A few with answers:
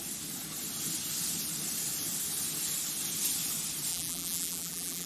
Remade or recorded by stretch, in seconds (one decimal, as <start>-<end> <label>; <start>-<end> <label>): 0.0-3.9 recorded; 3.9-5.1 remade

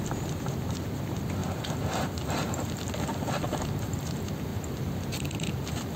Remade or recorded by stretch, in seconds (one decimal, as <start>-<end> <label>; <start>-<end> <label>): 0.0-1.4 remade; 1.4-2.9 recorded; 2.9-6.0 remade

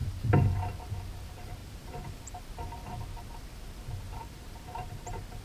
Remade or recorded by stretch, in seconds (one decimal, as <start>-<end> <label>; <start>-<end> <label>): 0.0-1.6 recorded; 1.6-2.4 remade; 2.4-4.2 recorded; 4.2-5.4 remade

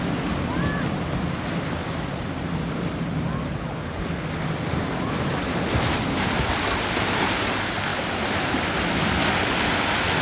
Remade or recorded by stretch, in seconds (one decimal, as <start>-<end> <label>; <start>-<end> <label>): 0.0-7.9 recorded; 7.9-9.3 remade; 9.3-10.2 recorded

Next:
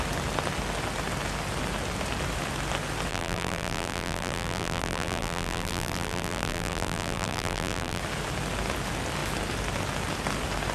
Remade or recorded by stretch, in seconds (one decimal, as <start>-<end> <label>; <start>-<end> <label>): 0.0-3.1 recorded; 3.1-8.0 remade; 8.0-10.7 recorded

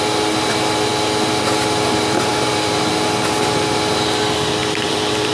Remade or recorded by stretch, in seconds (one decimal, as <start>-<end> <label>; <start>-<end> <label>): 0.0-2.3 recorded; 2.3-2.9 remade; 2.9-4.6 recorded; 4.6-5.3 remade

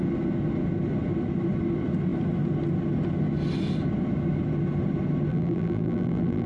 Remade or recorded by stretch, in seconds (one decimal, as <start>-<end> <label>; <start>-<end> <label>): 0.0-5.3 recorded; 5.3-6.5 remade